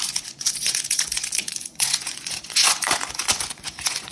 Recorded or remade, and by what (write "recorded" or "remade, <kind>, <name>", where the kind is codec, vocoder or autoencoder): remade, vocoder, Vocos